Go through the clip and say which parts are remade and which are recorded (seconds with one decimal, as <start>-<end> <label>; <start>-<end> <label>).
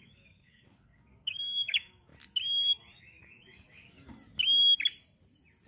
0.0-2.1 remade; 2.1-3.0 recorded; 3.0-4.0 remade; 4.0-5.7 recorded